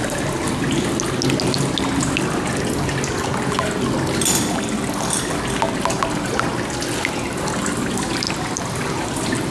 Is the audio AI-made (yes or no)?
no